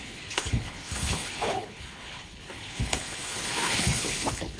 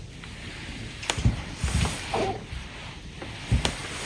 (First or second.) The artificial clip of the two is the first